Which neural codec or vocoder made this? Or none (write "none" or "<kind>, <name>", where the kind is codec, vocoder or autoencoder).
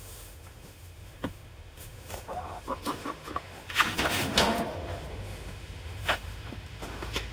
autoencoder, DAC-VAE